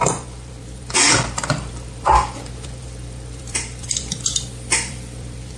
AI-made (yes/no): yes